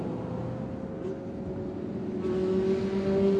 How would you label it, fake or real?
real